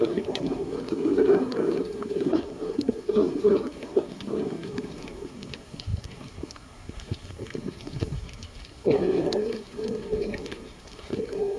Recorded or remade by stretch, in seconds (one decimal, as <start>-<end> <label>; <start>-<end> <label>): 0.0-11.6 remade